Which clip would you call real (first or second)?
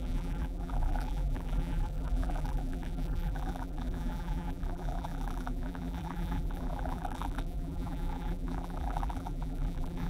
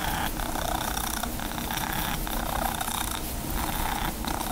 second